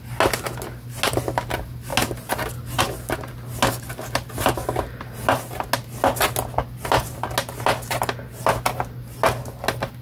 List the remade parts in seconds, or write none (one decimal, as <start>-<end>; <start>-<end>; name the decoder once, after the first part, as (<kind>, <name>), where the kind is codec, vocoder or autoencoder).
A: none